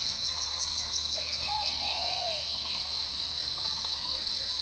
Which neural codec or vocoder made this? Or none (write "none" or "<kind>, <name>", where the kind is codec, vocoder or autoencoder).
codec, SNAC